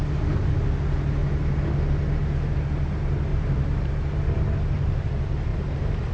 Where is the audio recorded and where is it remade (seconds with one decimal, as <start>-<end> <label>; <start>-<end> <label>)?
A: 0.0-3.3 recorded; 3.3-3.9 remade; 3.9-5.5 recorded; 5.5-6.1 remade